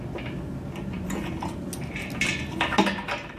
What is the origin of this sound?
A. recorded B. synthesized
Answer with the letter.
A